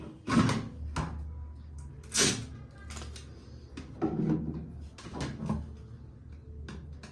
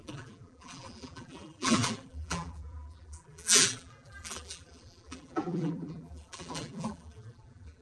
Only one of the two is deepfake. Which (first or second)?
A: second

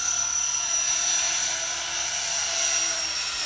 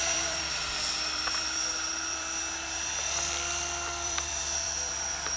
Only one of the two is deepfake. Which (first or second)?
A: second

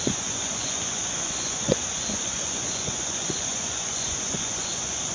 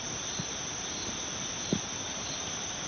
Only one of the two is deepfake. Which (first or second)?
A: first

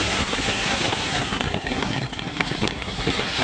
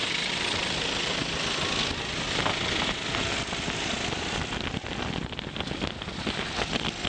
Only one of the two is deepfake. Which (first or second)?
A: first